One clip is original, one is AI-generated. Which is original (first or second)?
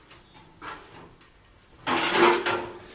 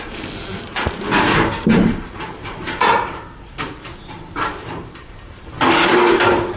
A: first